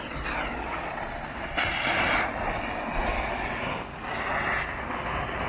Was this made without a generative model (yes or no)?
yes